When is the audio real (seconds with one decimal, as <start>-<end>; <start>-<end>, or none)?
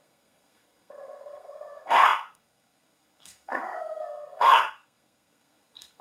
none